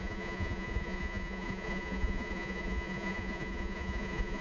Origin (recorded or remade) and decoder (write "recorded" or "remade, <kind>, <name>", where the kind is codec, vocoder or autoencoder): remade, vocoder, Vocos